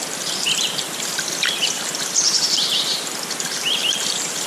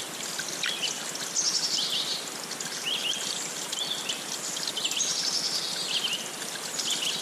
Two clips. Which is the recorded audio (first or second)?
second